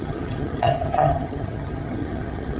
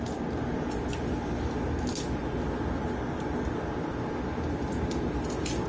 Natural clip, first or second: second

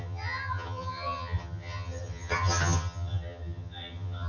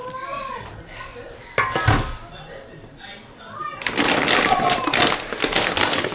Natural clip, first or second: second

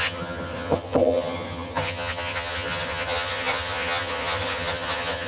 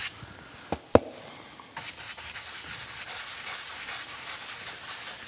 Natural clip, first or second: second